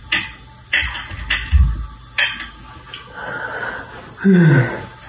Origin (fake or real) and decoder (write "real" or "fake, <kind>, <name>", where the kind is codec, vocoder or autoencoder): real